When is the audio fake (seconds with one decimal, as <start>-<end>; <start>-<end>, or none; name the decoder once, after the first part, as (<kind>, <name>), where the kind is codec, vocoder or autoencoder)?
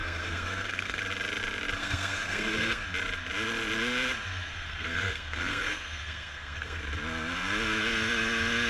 0.0-1.0 (codec, SNAC); 1.8-2.8; 4.5-6.8